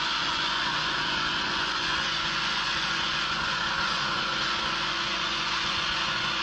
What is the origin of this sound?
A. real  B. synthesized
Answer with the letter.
B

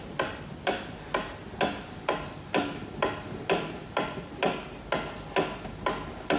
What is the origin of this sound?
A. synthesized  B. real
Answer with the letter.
B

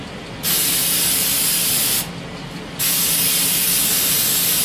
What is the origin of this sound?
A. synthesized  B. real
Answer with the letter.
B